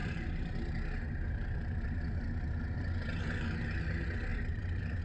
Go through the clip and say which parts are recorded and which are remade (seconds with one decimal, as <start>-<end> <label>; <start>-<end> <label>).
0.0-3.0 remade; 3.0-4.3 recorded; 4.3-5.0 remade